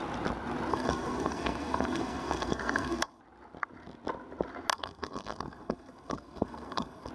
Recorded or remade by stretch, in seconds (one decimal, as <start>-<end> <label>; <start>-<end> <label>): 0.0-0.7 recorded; 0.7-3.2 remade; 3.2-4.7 recorded; 4.7-7.1 remade